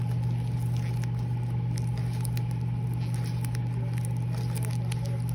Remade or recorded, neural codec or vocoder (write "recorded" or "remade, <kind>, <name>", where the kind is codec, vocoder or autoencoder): recorded